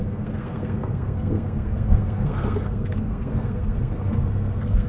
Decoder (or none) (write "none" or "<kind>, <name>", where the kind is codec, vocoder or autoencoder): codec, SNAC